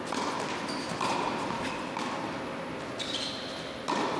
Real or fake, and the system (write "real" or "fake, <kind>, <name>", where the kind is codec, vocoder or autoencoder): real